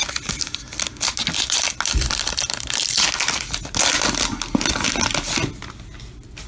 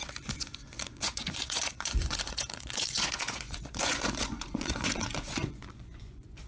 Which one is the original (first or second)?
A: first